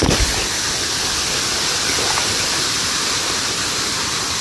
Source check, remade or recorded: remade